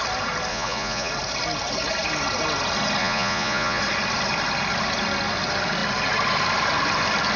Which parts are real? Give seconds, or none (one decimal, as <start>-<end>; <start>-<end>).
0.0-0.5; 1.1-3.0; 3.8-7.4